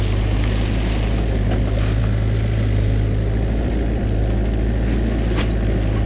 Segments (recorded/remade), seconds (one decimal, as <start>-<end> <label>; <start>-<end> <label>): 0.0-6.1 recorded